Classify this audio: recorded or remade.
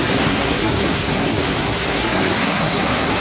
remade